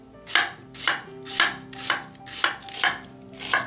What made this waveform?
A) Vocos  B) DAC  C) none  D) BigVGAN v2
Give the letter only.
C